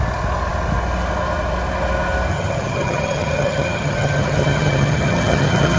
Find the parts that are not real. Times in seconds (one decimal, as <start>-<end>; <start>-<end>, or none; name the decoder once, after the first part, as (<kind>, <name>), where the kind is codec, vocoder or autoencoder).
2.3-5.8 (vocoder, HiFi-GAN)